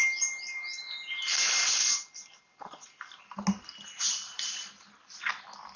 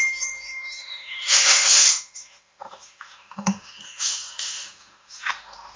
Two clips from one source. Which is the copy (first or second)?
second